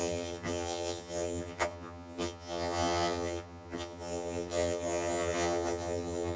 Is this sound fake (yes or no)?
yes